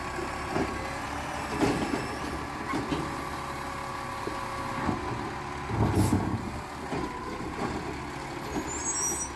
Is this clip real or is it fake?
real